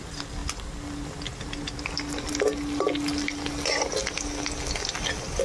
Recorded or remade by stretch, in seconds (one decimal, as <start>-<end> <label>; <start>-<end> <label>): 0.0-5.4 recorded